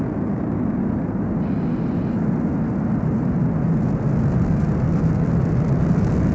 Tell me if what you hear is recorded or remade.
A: recorded